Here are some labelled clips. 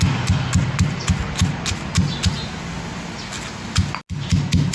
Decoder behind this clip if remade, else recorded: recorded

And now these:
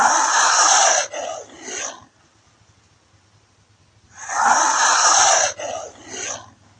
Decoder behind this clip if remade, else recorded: recorded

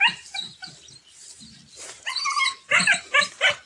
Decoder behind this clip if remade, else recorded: recorded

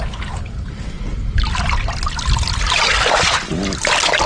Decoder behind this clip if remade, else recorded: recorded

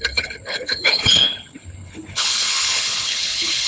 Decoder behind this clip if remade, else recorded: remade, codec, HILCodec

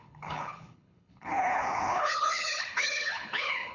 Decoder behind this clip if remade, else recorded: remade, codec, HILCodec